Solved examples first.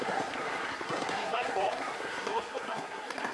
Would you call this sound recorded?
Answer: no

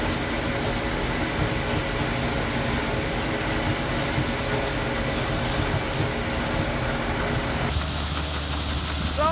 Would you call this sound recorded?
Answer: yes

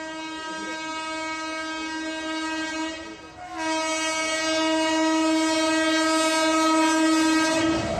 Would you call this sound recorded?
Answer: yes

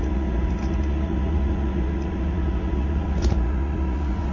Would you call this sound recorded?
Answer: no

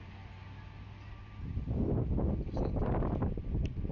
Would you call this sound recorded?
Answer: yes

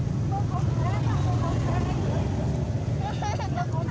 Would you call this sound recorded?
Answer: yes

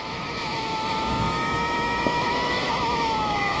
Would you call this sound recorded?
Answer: no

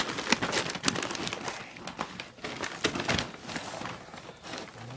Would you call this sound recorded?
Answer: yes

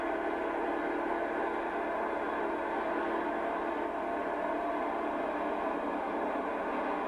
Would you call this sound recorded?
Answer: yes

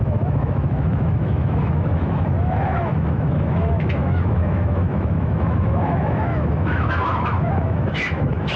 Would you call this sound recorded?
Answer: no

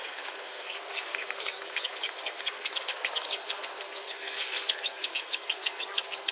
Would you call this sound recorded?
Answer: no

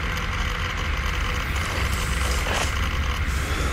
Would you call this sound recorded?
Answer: yes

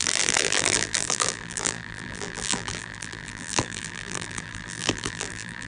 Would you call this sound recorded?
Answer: no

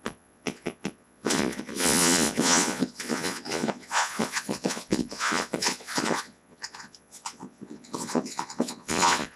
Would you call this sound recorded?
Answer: no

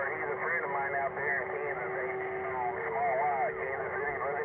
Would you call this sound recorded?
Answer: yes